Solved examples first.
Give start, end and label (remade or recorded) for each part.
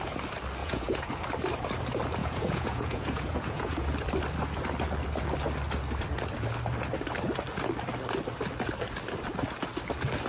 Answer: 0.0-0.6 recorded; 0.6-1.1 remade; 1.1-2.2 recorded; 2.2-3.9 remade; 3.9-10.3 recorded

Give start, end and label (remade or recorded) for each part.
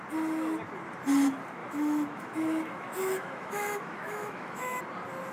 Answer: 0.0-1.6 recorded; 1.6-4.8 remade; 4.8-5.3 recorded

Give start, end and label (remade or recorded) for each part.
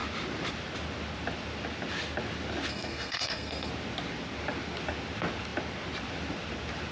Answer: 0.0-2.7 recorded; 2.7-3.7 remade; 3.7-6.9 recorded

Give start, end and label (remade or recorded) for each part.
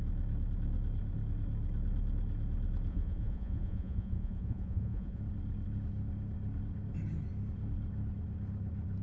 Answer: 0.0-2.9 recorded; 2.9-5.2 remade; 5.2-9.0 recorded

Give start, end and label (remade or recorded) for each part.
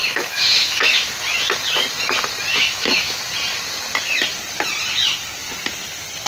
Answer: 0.0-1.1 remade; 1.1-2.5 recorded; 2.5-3.2 remade; 3.2-6.3 recorded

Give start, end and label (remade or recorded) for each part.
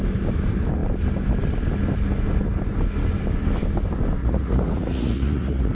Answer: 0.0-4.2 recorded; 4.2-5.7 remade